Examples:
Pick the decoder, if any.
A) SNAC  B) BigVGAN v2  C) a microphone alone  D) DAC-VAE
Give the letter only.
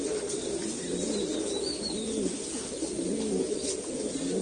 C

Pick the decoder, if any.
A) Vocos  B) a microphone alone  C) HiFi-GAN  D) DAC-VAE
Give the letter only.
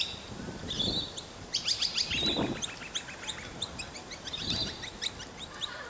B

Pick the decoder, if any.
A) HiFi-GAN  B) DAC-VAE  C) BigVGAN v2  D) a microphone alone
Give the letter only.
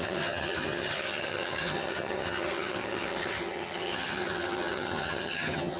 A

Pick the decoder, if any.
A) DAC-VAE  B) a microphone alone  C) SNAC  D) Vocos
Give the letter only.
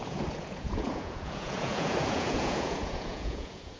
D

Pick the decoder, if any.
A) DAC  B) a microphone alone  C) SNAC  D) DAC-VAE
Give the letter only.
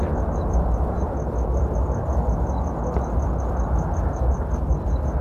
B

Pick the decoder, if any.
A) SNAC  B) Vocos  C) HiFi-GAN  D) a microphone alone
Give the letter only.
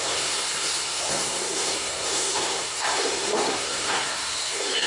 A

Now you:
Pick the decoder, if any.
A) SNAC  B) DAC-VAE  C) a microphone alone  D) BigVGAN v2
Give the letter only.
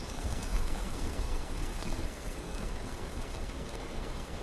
A